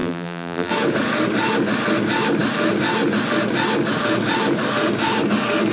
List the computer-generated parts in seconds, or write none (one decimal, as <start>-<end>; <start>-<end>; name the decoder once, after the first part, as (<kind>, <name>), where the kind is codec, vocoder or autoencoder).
0.0-0.7 (vocoder, BigVGAN v2)